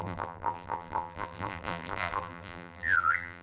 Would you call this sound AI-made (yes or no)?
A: yes